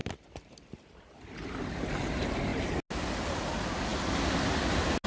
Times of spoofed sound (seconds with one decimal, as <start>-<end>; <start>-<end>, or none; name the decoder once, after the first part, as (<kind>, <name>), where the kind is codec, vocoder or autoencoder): none